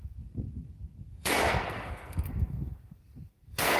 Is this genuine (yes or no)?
no